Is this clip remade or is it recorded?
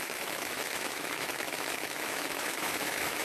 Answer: remade